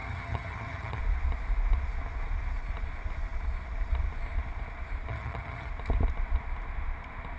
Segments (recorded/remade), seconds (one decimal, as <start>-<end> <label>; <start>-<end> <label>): 0.0-1.0 remade; 1.0-5.1 recorded; 5.1-5.7 remade; 5.7-7.4 recorded